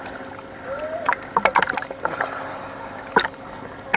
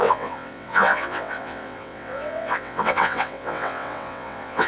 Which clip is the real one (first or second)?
first